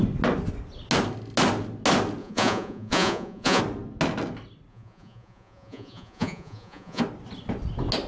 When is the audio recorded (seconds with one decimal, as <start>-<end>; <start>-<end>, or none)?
0.0-2.2; 3.6-4.7; 7.0-8.1